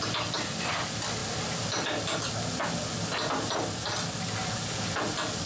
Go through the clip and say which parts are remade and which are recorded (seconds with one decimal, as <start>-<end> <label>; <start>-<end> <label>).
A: 0.0-5.5 recorded